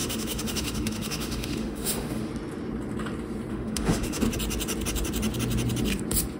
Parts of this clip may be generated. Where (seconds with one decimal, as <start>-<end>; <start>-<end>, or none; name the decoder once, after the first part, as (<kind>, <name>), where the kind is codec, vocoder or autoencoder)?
0.0-2.3 (autoencoder, DAC-VAE); 3.5-4.2